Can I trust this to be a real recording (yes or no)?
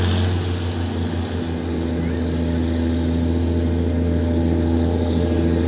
yes